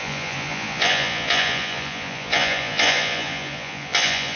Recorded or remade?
remade